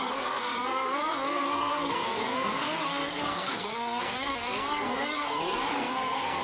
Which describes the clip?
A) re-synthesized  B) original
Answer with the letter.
A